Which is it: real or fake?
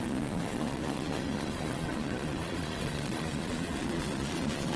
fake